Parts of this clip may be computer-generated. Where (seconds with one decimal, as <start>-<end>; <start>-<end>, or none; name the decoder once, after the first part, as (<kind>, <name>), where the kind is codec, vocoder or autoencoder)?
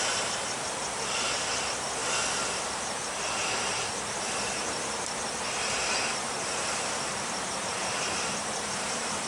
0.0-2.0 (vocoder, BigVGAN v2); 4.2-9.3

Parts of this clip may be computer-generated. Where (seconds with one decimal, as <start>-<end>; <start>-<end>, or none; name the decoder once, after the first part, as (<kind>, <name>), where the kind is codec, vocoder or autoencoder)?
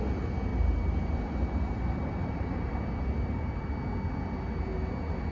0.5-3.7 (vocoder, BigVGAN v2)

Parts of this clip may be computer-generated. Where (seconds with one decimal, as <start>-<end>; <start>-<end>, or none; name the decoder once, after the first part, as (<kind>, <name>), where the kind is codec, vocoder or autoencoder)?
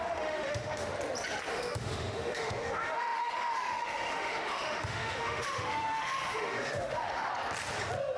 0.0-0.9 (autoencoder, DAC-VAE); 1.5-7.3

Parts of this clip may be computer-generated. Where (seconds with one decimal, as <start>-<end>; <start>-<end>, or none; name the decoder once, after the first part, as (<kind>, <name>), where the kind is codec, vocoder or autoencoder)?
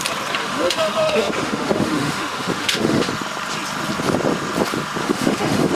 0.4-3.1 (autoencoder, DAC-VAE); 5.0-5.7